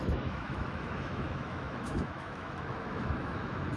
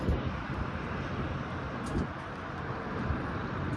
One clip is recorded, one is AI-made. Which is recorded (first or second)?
second